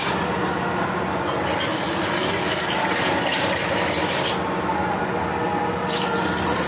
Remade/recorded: recorded